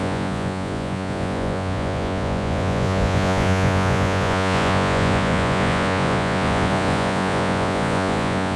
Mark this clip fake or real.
fake